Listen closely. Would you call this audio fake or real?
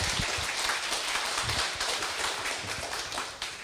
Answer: fake